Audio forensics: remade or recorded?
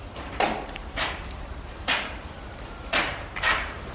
remade